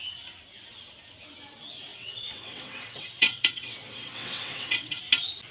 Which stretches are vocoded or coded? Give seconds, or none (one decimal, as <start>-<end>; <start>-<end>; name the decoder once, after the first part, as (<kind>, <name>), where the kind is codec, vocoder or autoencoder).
1.9-5.0 (vocoder, WaveNeXt)